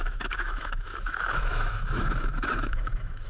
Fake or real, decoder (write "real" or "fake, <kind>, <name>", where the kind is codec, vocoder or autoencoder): fake, autoencoder, DAC-VAE